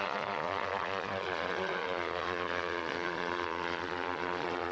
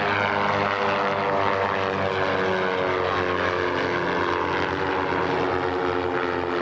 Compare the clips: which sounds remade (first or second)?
first